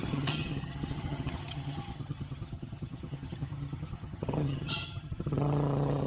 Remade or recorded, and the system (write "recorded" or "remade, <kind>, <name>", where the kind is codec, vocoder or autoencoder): remade, vocoder, HiFi-GAN